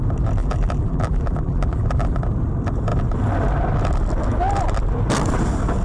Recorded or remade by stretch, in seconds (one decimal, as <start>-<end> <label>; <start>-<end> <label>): 0.0-0.4 recorded; 0.4-2.2 remade; 2.2-5.8 recorded

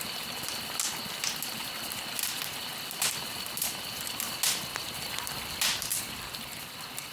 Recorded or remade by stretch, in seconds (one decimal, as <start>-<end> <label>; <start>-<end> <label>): 0.0-7.1 recorded